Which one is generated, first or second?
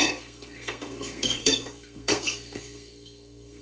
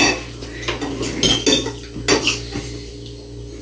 first